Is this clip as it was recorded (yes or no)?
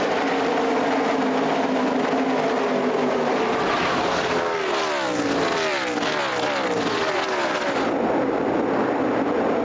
yes